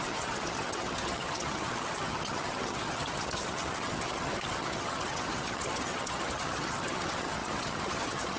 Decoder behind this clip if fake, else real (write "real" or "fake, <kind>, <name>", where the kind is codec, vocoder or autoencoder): fake, vocoder, HiFi-GAN